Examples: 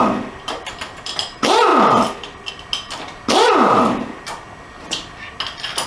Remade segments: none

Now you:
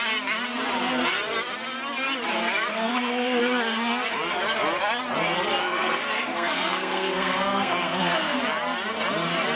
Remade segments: 2.7-3.4; 5.6-8.4

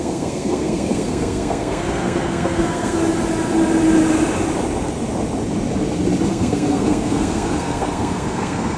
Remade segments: 0.0-3.0; 6.3-8.8

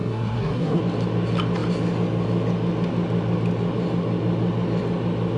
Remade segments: 0.0-0.8

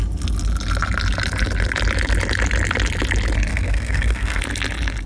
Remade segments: 3.5-4.4